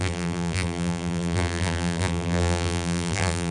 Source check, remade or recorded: remade